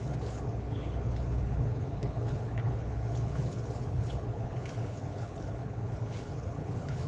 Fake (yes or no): yes